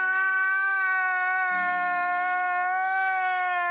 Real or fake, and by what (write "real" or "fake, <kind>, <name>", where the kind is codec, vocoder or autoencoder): fake, autoencoder, DAC-VAE